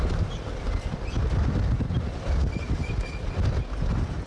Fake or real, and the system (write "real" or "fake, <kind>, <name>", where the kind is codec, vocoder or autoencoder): real